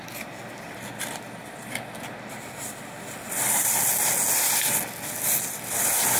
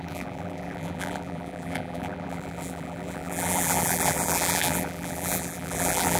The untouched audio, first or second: first